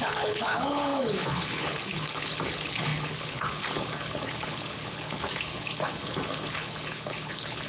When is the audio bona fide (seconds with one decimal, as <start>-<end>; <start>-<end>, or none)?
none